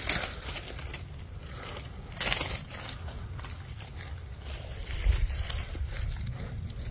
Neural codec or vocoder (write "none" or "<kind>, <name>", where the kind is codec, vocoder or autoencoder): none